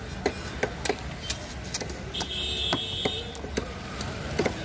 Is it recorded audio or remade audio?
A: recorded